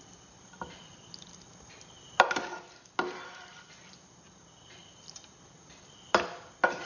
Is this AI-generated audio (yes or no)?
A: no